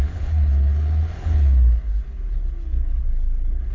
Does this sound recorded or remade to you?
remade